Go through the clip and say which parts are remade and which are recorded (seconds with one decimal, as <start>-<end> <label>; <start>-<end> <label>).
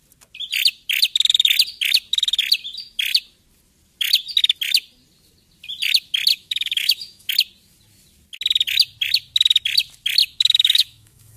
0.0-6.3 recorded; 6.3-7.3 remade; 7.3-10.2 recorded; 10.2-11.4 remade